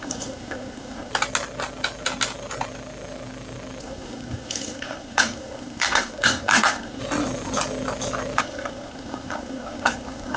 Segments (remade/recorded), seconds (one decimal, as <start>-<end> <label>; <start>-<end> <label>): 0.0-1.1 remade; 1.1-3.8 recorded; 3.8-7.0 remade; 7.0-8.4 recorded; 8.4-10.4 remade